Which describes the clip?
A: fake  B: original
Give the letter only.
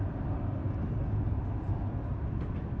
B